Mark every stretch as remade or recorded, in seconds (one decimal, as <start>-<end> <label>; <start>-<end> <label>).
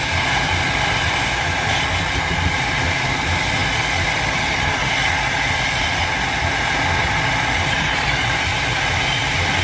0.0-9.6 recorded